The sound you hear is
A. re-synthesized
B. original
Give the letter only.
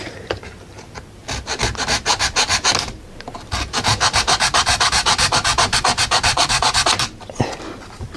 B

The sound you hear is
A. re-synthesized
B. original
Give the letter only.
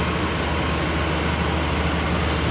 B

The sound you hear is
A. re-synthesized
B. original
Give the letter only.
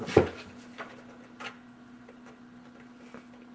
B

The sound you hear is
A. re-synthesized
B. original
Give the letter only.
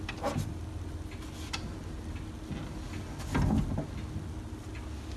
B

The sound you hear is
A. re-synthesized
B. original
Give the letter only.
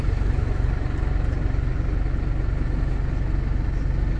B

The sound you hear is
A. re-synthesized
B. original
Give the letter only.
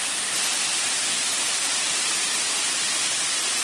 B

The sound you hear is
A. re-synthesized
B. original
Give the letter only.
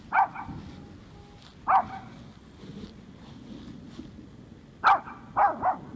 B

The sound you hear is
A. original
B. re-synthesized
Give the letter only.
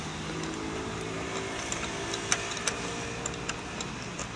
A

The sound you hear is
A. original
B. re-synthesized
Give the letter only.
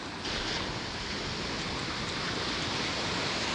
A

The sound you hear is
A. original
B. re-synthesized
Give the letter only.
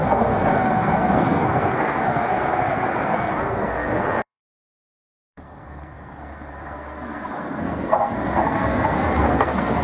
B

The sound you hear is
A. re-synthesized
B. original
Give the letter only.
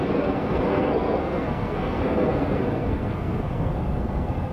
A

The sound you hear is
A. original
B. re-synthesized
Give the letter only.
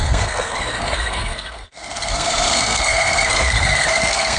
B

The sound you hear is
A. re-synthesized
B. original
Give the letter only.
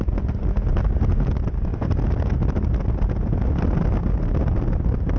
B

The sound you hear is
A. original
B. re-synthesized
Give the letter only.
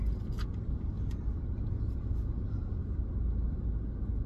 A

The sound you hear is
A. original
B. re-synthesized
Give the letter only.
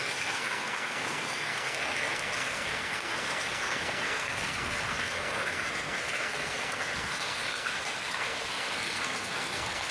B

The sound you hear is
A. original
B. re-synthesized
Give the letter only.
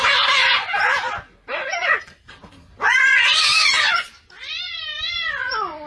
A